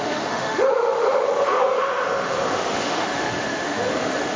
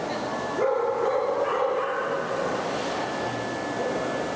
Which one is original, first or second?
second